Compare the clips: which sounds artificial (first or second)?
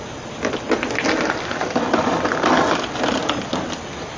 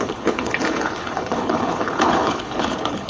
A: second